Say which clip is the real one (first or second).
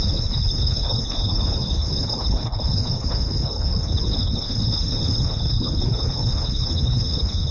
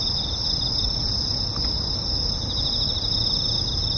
second